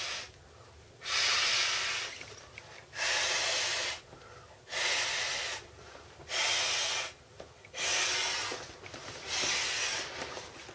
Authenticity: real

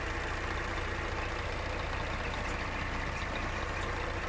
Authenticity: real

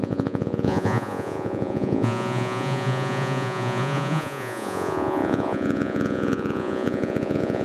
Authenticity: fake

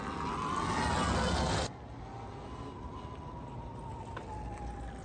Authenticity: real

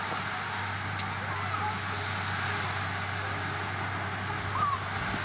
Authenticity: real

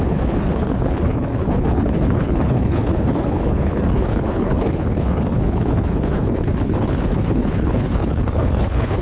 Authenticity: fake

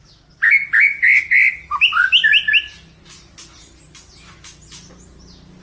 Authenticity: real